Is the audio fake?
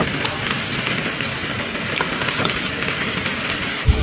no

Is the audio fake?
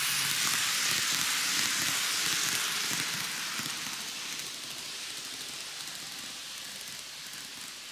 no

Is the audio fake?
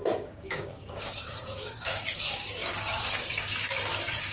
yes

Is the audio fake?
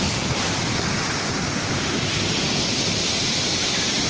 yes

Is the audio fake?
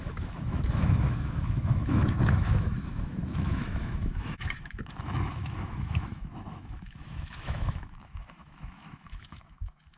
yes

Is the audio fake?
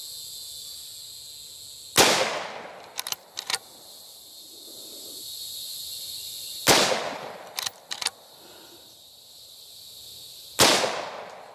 no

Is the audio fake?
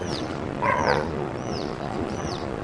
yes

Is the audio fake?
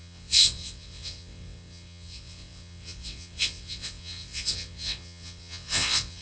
yes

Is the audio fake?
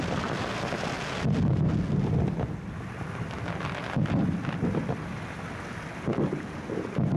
no